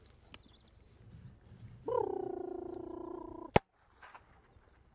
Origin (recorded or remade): recorded